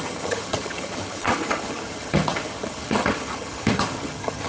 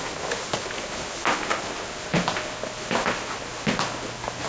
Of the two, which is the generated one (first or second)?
first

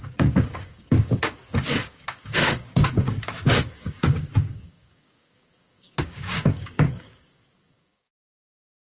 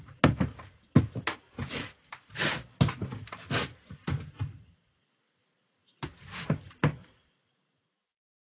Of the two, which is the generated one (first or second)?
first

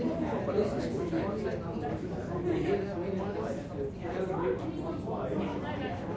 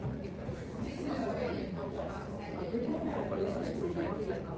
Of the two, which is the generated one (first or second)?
second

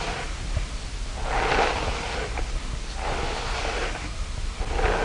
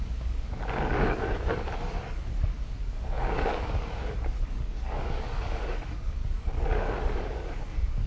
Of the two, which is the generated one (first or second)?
second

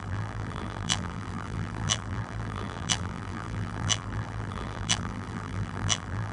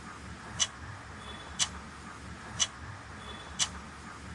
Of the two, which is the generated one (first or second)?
first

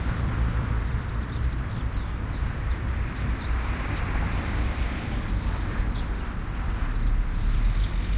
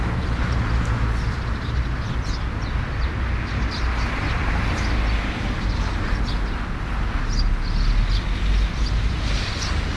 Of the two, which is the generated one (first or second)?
first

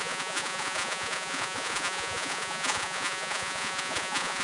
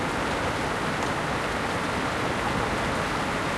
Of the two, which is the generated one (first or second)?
first